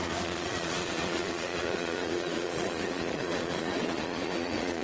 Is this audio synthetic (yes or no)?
yes